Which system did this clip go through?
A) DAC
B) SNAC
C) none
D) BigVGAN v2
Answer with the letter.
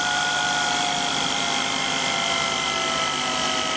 C